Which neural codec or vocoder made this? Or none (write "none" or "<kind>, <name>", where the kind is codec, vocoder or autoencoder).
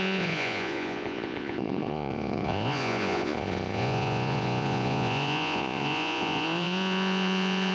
vocoder, Vocos